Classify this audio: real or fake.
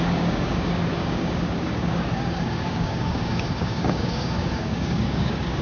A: fake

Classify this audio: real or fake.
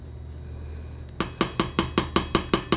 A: real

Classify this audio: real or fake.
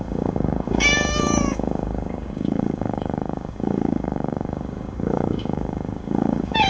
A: fake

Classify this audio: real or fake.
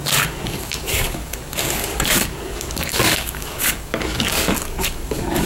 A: fake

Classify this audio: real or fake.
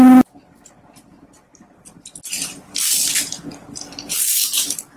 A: real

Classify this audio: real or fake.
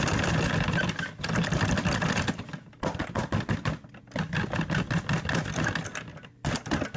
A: real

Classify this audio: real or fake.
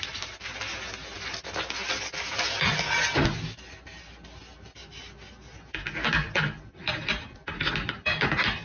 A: real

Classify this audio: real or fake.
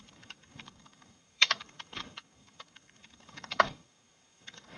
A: fake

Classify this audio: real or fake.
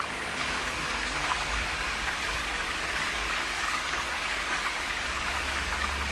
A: fake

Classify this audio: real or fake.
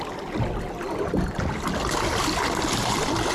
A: real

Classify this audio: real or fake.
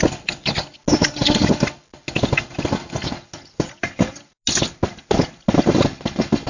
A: real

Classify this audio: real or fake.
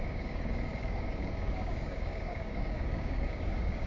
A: fake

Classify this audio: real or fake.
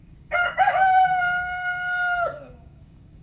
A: fake